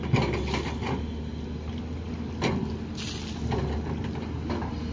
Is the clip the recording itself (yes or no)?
yes